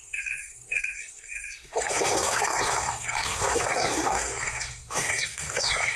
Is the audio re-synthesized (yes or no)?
yes